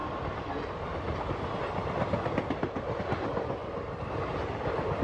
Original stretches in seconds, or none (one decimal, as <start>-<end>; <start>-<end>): 0.0-5.0

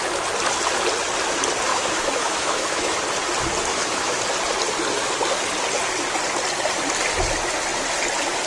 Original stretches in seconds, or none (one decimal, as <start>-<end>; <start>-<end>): 0.0-1.7; 3.0-3.7; 4.2-8.5

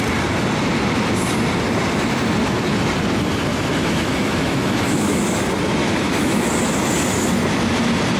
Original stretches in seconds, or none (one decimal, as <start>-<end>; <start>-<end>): 0.0-3.5; 5.2-5.8; 6.4-8.2

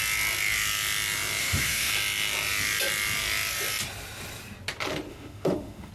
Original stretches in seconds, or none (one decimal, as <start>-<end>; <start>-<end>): 0.0-1.4; 1.9-5.1

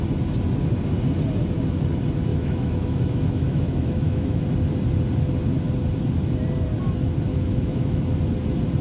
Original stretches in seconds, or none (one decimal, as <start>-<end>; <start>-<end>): 0.0-2.3; 4.4-7.3; 8.0-8.8

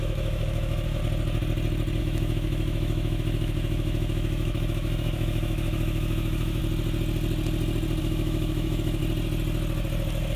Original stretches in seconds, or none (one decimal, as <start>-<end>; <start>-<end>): 1.0-2.0; 6.6-8.0; 9.0-10.4